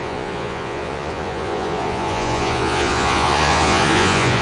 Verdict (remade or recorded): remade